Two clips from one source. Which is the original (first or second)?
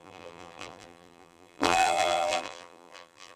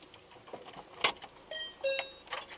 second